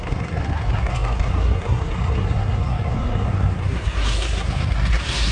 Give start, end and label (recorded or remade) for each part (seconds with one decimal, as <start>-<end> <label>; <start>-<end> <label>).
0.0-5.3 remade